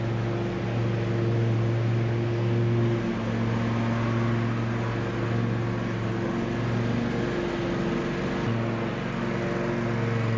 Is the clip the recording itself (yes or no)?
yes